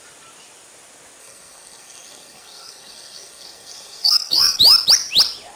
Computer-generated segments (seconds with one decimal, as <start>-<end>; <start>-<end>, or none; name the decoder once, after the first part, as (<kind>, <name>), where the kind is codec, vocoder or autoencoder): 1.2-4.6 (codec, SNAC)